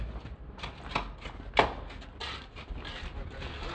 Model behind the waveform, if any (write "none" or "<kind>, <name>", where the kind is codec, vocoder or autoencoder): none